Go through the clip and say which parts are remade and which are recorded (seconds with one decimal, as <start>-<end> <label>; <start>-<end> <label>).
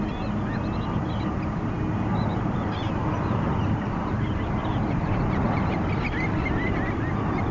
0.0-2.3 recorded; 2.3-5.5 remade; 5.5-7.5 recorded